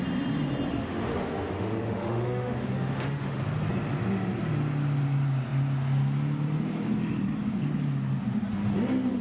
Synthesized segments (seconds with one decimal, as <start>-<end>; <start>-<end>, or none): 0.7-3.4